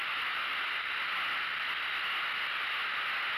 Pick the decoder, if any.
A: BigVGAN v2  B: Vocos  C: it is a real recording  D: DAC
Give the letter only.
C